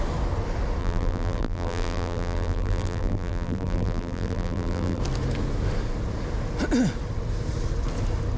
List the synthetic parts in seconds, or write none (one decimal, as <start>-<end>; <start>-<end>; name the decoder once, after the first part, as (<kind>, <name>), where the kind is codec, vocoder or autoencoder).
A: 0.8-5.0 (vocoder, BigVGAN v2)